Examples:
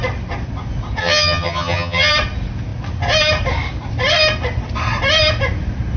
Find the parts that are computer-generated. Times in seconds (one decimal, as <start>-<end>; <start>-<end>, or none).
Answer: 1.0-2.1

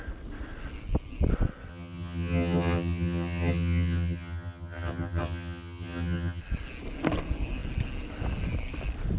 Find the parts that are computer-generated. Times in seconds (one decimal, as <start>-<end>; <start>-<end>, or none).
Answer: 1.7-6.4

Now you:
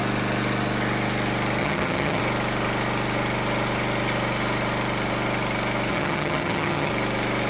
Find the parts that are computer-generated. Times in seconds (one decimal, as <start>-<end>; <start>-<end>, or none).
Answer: 1.6-2.2; 5.9-6.9